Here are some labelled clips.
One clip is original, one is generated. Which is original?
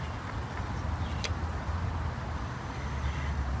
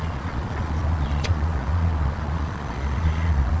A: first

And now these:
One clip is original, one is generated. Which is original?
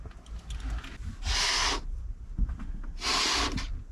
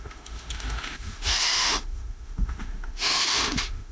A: first